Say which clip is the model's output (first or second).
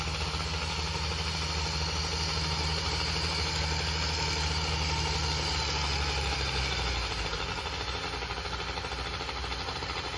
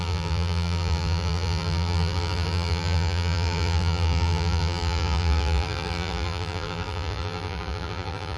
second